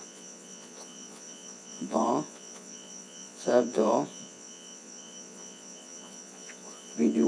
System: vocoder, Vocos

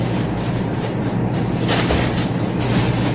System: none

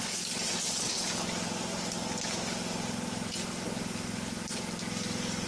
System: none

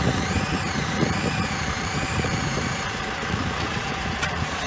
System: vocoder, Vocos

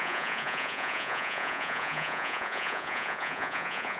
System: vocoder, Vocos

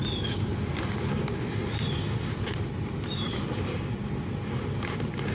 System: none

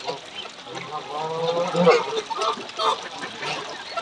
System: none